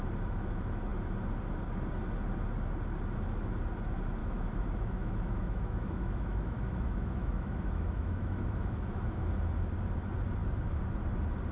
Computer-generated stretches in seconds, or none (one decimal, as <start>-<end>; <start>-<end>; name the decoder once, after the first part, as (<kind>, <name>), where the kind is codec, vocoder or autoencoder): 4.2-9.3 (autoencoder, DAC-VAE)